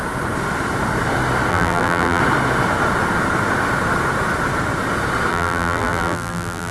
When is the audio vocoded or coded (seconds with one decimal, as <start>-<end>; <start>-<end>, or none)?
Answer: 1.5-2.2; 5.3-6.7